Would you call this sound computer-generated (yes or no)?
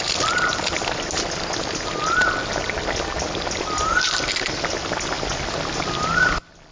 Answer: no